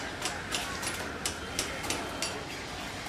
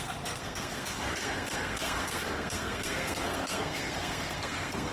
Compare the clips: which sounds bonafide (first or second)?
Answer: first